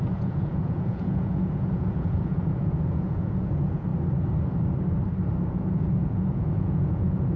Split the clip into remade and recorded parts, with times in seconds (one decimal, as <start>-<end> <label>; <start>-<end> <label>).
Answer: 0.0-3.9 remade; 3.9-5.5 recorded; 5.5-7.4 remade